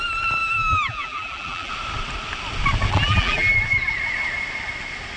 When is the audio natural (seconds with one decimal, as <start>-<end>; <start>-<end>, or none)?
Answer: 0.0-0.4; 1.7-2.9; 3.5-5.2